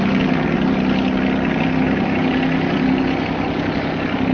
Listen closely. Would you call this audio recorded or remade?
recorded